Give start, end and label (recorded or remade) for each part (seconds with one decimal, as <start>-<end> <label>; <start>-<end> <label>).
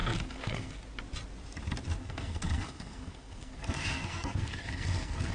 0.0-0.8 remade; 0.8-2.0 recorded; 2.0-5.3 remade